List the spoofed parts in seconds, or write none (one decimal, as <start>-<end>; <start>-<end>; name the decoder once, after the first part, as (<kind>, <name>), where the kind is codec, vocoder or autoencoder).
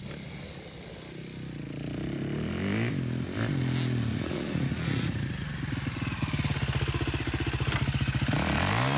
4.1-5.2 (vocoder, Vocos)